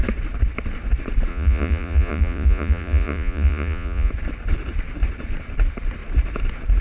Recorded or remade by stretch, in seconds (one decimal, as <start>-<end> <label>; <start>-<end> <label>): 0.0-1.3 recorded; 1.3-4.1 remade; 4.1-6.8 recorded